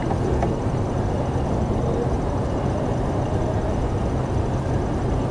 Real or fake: real